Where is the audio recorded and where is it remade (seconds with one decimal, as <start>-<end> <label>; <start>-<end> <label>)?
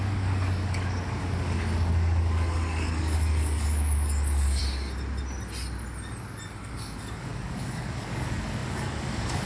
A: 0.0-4.6 remade; 4.6-6.5 recorded; 6.5-9.5 remade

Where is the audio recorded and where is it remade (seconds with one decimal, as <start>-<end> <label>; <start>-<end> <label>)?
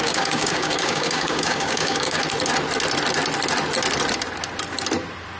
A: 0.0-2.2 remade; 2.2-5.4 recorded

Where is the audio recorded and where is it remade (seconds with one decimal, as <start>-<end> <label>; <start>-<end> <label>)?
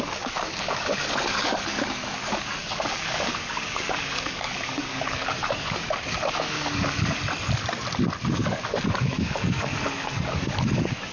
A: 0.0-7.2 remade; 7.2-8.3 recorded; 8.3-11.1 remade